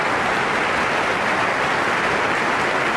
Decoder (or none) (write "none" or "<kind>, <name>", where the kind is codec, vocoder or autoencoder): none